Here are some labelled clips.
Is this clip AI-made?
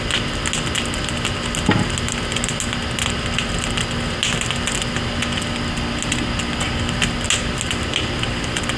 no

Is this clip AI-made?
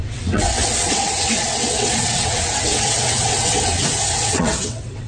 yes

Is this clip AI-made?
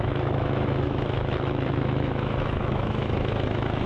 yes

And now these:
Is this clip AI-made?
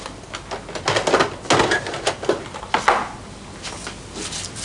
no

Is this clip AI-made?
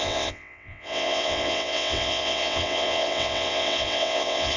yes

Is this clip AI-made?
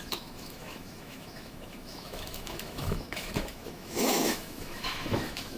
yes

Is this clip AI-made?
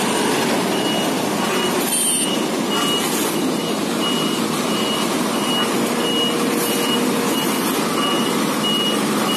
no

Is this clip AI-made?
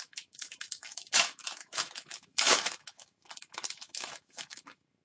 yes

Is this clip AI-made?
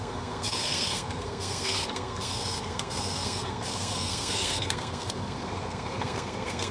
yes